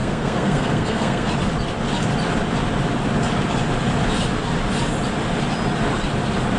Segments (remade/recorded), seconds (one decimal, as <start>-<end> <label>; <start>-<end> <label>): 0.0-1.3 remade; 1.3-6.6 recorded